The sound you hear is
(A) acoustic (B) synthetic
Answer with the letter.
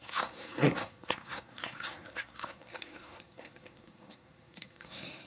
B